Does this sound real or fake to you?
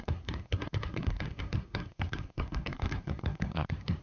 fake